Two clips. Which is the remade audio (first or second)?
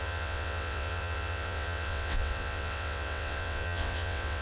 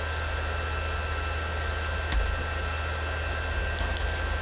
first